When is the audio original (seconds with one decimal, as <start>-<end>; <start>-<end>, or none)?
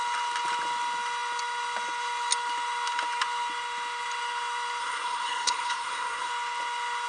0.0-4.8; 6.3-7.1